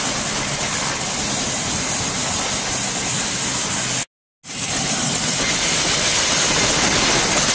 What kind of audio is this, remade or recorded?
recorded